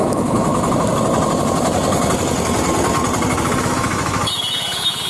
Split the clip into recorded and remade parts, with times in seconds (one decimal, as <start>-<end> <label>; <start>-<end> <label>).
0.0-0.5 remade; 0.5-3.6 recorded; 3.6-5.1 remade